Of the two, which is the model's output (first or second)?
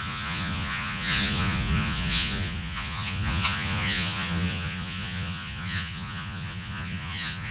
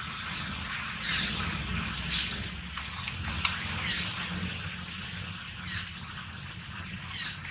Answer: first